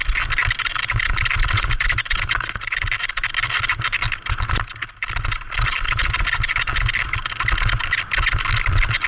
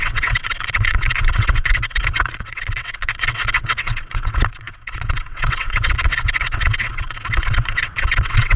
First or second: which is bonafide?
first